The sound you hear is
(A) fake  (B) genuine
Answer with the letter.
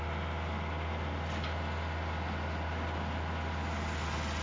B